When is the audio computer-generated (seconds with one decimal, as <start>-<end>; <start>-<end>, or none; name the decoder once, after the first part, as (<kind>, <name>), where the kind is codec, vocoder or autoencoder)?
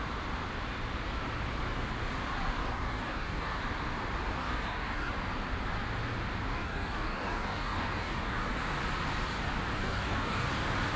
2.6-3.6 (codec, DAC); 4.4-5.1; 6.5-8.5; 9.8-10.5